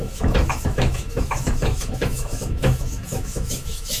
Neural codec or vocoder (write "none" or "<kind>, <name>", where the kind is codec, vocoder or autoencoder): autoencoder, DAC-VAE